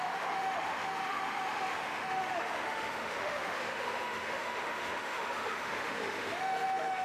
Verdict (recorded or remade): remade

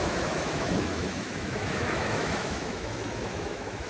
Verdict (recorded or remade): remade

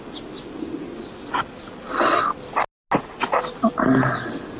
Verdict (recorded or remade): recorded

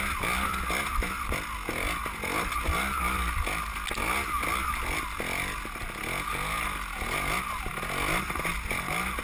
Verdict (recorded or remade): recorded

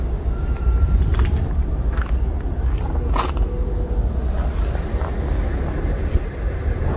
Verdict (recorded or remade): recorded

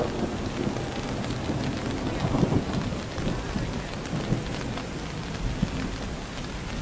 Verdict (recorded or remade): recorded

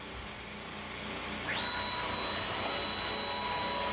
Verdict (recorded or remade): recorded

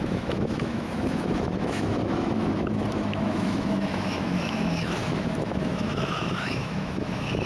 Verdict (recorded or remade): remade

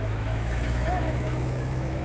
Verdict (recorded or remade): remade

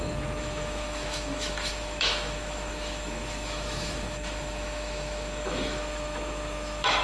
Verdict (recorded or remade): remade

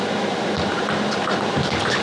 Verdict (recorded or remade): recorded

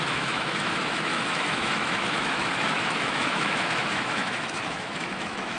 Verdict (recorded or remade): remade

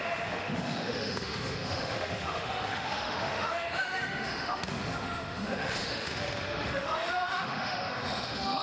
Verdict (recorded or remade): remade